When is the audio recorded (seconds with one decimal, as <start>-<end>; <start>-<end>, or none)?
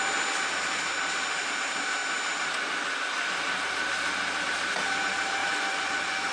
0.0-5.4